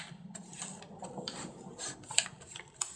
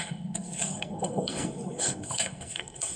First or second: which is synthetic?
second